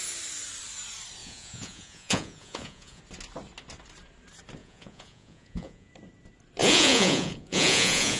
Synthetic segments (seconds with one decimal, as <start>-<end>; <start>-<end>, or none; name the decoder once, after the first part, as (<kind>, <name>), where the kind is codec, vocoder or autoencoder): 1.2-3.0 (vocoder, Vocos); 4.6-5.9; 6.6-8.2